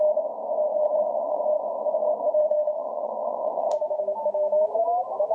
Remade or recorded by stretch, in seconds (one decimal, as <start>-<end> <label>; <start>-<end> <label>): 0.0-0.7 recorded; 0.7-1.4 remade; 1.4-2.4 recorded; 2.4-4.0 remade; 4.0-5.3 recorded